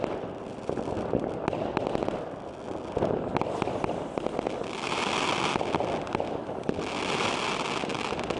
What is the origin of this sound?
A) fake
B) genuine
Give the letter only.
B